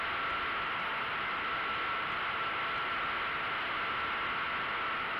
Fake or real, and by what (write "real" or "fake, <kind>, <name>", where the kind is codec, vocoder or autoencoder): real